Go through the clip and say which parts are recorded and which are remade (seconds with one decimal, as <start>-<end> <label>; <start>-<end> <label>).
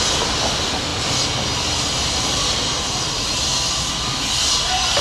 0.0-5.0 recorded